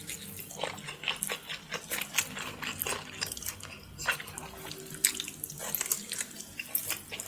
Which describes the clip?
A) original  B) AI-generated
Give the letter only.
A